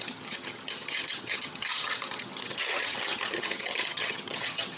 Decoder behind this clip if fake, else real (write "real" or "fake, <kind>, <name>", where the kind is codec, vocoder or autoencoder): fake, vocoder, HiFi-GAN